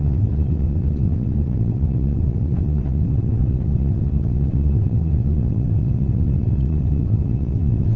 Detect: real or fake fake